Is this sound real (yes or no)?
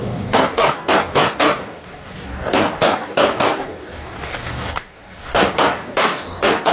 no